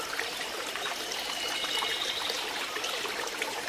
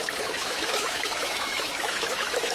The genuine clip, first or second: first